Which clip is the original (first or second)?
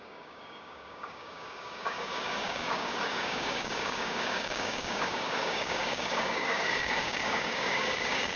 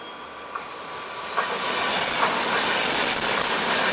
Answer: second